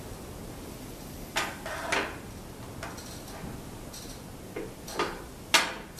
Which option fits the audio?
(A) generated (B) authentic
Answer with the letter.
B